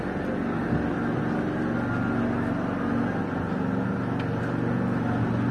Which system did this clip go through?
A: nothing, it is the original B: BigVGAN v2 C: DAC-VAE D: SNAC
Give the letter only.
A